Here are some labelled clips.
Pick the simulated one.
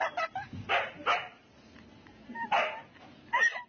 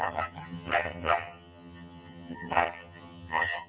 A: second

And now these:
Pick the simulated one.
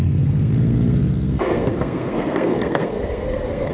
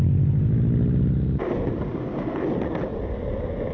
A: first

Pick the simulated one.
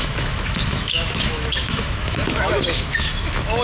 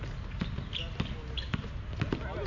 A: first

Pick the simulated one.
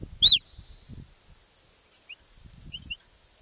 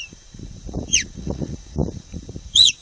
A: second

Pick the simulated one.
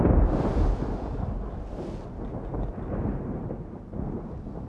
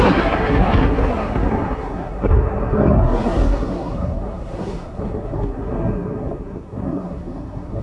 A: second